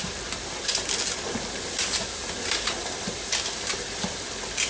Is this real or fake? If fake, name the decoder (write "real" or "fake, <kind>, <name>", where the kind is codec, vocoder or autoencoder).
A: real